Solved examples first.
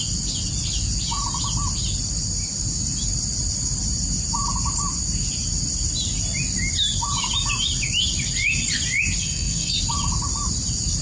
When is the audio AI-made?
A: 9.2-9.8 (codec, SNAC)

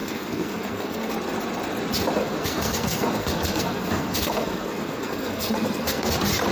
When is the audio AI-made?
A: 0.0-1.1 (codec, SNAC); 2.2-6.1